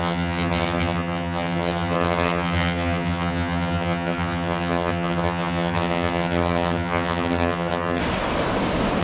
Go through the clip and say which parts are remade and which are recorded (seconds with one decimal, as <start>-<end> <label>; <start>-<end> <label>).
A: 0.0-8.0 remade; 8.0-9.0 recorded

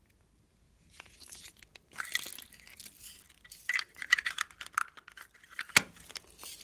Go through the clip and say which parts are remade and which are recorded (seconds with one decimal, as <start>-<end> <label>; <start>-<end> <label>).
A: 0.0-6.6 recorded

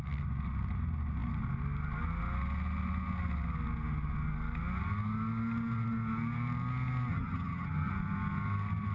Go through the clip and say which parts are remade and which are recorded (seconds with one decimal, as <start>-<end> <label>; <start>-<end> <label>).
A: 0.0-7.1 recorded; 7.1-7.9 remade; 7.9-8.9 recorded